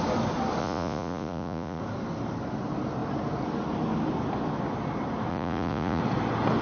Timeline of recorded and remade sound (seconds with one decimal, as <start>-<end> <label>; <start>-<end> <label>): 0.0-0.6 recorded; 0.6-1.8 remade; 1.8-5.3 recorded; 5.3-6.0 remade; 6.0-6.6 recorded